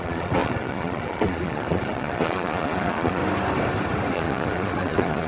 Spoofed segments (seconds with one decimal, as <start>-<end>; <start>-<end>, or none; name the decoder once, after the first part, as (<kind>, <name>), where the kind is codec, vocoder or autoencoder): 0.0-3.2 (vocoder, Vocos); 4.1-5.3